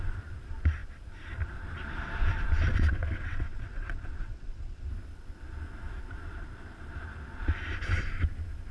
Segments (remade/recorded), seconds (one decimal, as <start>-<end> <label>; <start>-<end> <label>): 0.0-2.7 recorded; 2.7-4.9 remade; 4.9-8.7 recorded